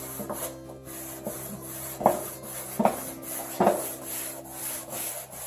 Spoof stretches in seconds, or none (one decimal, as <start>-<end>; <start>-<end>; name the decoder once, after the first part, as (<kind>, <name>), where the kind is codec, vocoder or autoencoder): 4.6-5.1 (codec, DAC)

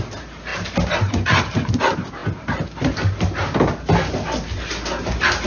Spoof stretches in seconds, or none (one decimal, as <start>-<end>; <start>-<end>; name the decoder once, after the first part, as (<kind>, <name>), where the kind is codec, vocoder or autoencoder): none

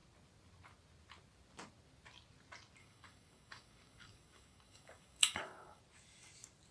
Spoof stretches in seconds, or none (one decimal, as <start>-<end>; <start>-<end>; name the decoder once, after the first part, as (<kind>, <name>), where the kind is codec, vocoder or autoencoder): 2.8-5.8 (codec, DAC)

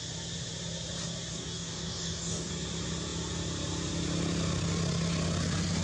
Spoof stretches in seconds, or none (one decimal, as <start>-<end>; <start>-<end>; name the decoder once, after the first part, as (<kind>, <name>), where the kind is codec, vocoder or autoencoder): 1.3-2.5 (codec, DAC)